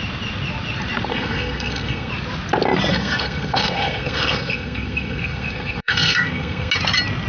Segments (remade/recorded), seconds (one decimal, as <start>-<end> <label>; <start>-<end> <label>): 0.0-1.1 recorded; 1.1-2.1 remade; 2.1-2.9 recorded; 2.9-6.7 remade; 6.7-7.3 recorded